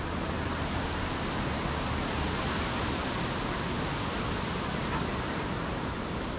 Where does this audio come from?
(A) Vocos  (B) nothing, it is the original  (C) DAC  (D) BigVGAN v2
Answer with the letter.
B